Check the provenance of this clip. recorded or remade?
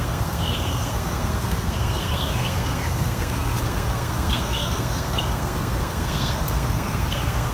remade